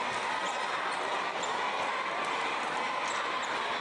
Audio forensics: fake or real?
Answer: real